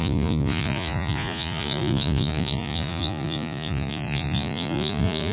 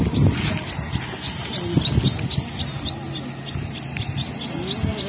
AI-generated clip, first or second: first